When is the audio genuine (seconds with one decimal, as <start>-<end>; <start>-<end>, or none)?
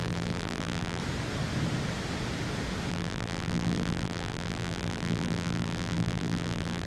1.0-2.9